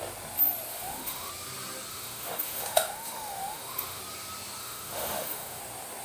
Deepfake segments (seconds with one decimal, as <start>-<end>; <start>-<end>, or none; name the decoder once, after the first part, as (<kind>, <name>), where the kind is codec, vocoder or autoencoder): 0.7-1.3 (autoencoder, DAC-VAE); 1.9-4.0; 4.6-5.6

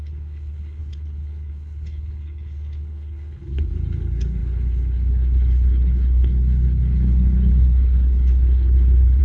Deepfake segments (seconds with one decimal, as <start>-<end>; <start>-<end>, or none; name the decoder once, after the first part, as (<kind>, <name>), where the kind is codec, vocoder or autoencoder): 0.0-9.2 (codec, HILCodec)

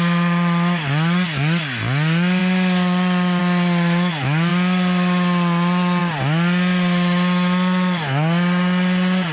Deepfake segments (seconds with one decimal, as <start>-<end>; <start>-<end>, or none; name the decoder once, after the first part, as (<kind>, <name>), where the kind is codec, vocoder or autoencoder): none

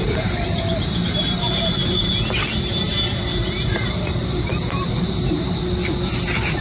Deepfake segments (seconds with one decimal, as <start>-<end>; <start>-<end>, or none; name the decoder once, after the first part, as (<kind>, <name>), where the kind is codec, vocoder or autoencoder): 0.0-2.1 (vocoder, BigVGAN v2); 3.3-5.6

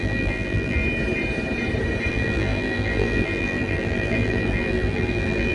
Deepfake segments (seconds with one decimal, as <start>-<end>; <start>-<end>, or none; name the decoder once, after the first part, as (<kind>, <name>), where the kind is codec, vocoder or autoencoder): 0.0-0.8 (vocoder, BigVGAN v2); 2.1-5.5

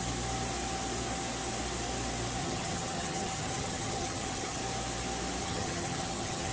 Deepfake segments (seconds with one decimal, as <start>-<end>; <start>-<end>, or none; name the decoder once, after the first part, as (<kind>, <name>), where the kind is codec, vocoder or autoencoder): 2.4-4.6 (vocoder, HiFi-GAN); 5.4-6.5

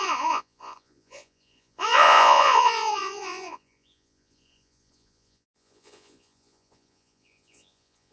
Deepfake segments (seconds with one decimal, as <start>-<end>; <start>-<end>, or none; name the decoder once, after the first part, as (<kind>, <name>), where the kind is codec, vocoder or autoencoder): 0.0-8.1 (vocoder, Vocos)

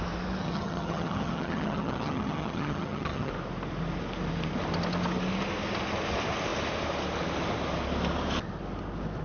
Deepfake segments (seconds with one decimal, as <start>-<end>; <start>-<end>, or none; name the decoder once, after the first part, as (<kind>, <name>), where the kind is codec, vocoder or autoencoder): 0.4-3.3 (vocoder, HiFi-GAN)